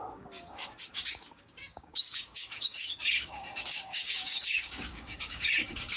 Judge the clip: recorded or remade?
remade